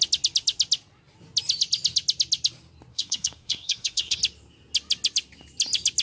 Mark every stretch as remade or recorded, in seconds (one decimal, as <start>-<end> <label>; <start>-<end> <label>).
0.0-2.9 recorded; 2.9-4.2 remade; 4.2-6.0 recorded